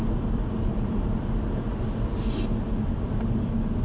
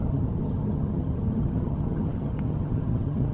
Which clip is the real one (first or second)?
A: first